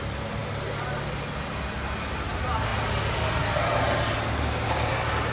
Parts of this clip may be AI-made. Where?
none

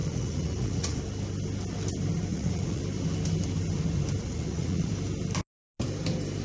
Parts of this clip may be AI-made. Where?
0.0-1.0 (vocoder, Vocos); 2.3-2.8; 4.2-4.9